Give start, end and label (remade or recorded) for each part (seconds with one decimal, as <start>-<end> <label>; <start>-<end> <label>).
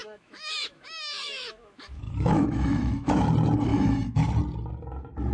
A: 0.0-3.2 remade; 3.2-3.7 recorded; 3.7-4.3 remade; 4.3-5.3 recorded